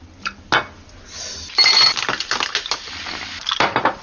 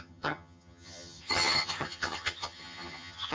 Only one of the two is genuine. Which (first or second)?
first